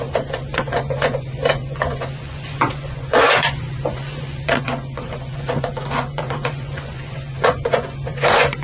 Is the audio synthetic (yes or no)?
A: yes